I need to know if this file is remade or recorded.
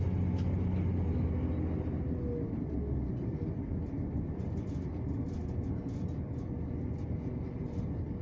recorded